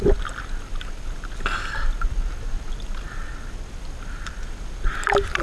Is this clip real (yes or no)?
yes